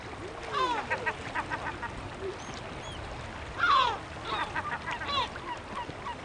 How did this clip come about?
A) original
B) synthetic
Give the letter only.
A